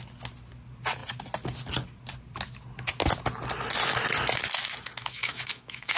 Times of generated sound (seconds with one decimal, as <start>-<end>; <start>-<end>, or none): 5.0-6.0